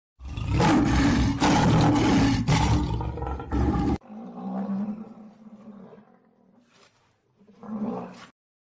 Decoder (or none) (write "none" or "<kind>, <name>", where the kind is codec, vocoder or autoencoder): none